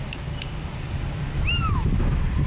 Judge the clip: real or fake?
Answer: real